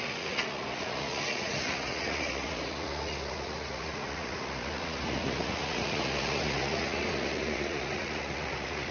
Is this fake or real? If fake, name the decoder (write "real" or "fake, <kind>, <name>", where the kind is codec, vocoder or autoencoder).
fake, vocoder, Vocos